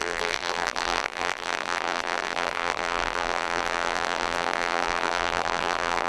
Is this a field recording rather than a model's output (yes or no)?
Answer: no